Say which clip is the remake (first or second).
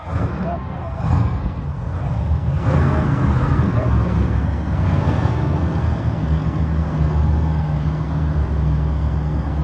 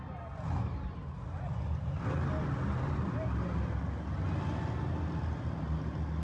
first